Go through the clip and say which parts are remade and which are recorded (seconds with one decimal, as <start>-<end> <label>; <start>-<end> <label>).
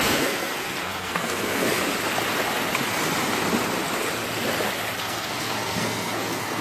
0.0-1.7 remade; 1.7-5.0 recorded; 5.0-6.6 remade